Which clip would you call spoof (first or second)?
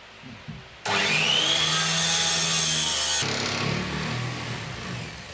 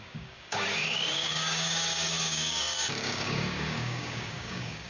second